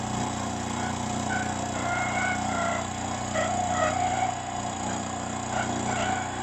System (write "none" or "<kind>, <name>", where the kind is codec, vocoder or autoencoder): none